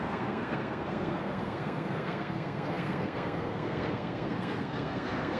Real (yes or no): no